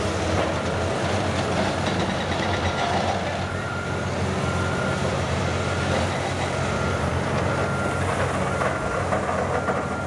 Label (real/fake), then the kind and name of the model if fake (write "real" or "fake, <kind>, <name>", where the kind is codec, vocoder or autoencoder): real